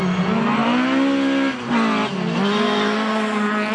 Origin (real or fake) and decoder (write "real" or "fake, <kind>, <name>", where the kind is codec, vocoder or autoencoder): real